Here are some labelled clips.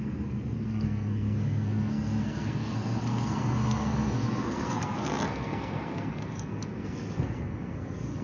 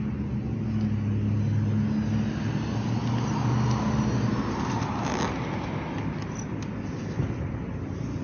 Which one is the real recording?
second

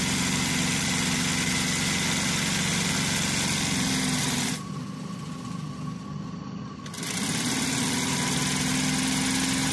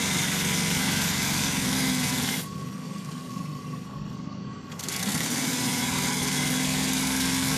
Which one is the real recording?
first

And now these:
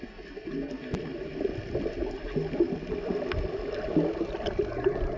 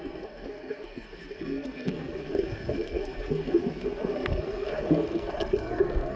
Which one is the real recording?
first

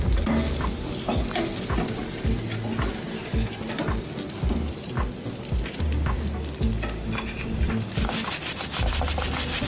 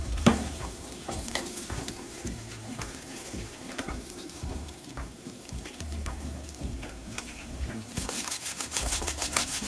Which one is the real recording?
first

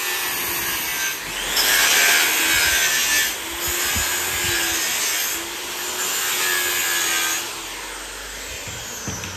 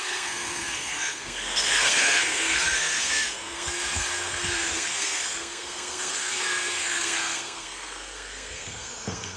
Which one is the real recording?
first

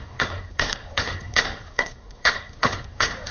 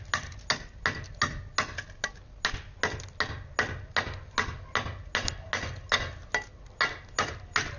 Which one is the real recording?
second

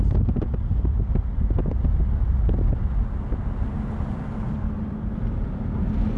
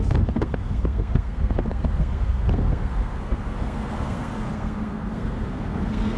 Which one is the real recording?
first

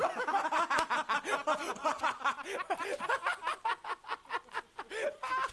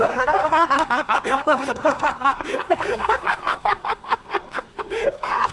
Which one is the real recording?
first